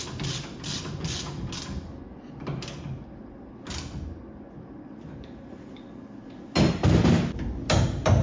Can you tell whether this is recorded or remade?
recorded